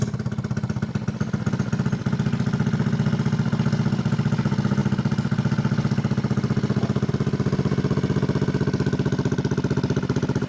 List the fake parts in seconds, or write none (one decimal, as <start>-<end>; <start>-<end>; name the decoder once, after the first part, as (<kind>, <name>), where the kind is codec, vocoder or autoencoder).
none